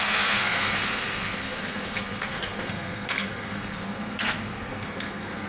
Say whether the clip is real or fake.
fake